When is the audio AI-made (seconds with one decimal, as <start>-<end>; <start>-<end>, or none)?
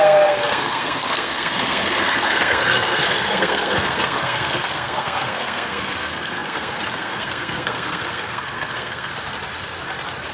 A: 0.0-9.1